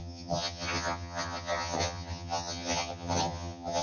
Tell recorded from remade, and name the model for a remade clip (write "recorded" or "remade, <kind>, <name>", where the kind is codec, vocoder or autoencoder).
remade, vocoder, HiFi-GAN